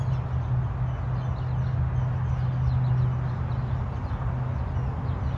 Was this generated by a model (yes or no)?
no